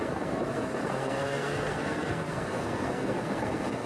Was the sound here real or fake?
fake